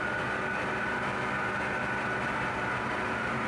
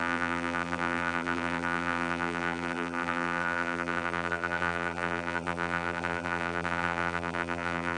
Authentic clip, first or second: first